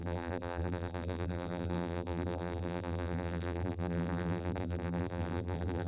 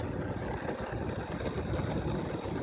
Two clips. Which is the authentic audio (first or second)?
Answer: second